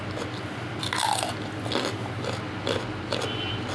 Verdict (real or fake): real